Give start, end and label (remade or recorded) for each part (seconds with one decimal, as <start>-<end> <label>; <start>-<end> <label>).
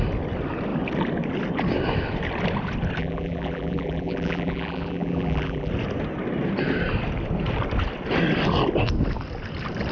0.0-3.0 recorded; 3.0-5.7 remade; 5.7-9.9 recorded